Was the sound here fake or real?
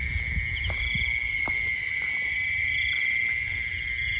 real